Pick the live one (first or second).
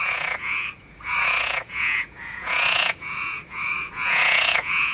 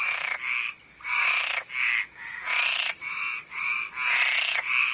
second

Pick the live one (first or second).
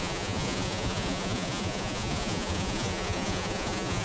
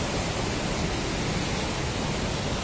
second